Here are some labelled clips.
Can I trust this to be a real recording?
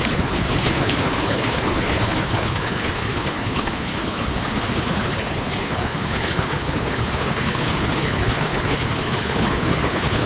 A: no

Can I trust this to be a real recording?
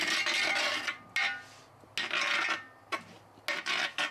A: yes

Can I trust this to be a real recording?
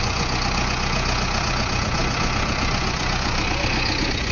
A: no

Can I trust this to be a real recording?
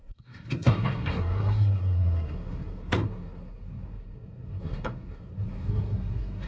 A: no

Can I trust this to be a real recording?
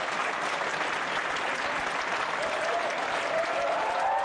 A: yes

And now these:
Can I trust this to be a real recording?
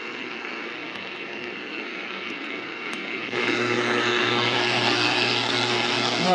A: no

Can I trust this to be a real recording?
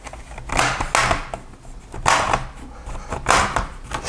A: yes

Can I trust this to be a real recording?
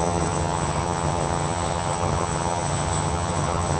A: no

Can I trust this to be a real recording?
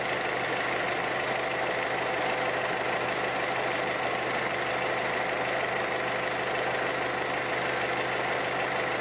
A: yes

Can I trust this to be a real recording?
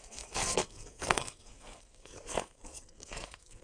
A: no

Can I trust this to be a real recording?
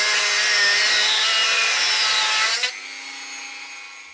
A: yes